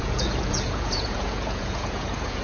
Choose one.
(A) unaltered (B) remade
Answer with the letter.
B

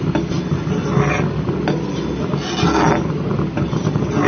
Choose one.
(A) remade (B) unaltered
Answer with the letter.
B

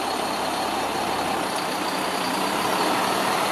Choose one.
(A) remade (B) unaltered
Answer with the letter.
B